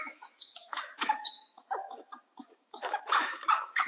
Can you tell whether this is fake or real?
fake